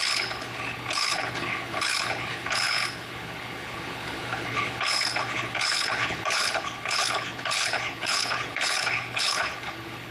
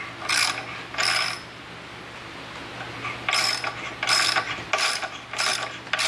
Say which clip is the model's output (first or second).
first